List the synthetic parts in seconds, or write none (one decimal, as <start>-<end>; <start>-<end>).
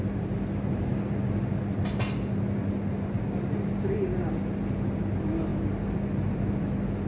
none